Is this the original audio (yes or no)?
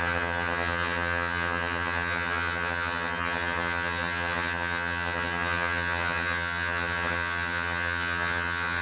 no